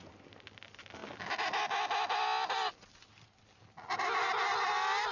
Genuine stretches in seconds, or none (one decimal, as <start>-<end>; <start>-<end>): 0.0-5.1